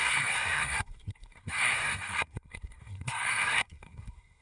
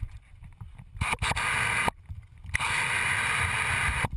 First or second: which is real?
second